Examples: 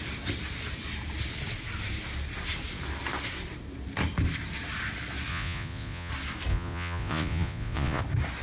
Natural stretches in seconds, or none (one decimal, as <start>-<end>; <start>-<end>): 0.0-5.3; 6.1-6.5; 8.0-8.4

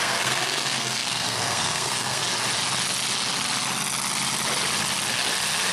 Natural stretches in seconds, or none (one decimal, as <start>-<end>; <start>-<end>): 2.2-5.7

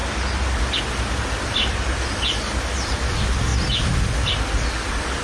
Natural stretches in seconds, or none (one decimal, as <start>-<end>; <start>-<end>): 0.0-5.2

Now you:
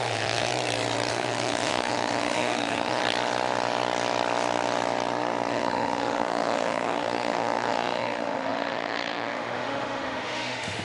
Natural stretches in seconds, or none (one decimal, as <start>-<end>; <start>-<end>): 0.5-1.1; 3.0-5.5

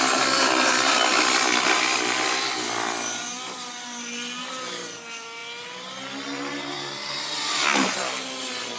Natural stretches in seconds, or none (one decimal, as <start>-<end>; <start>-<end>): 0.0-8.8